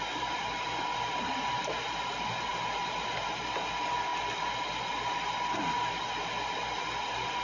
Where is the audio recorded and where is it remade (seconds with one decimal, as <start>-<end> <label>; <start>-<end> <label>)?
0.0-1.2 remade; 1.2-2.5 recorded; 2.5-3.4 remade; 3.4-7.4 recorded